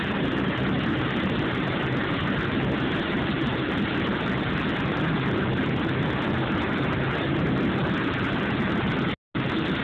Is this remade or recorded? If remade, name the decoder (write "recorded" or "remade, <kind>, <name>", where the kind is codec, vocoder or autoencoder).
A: recorded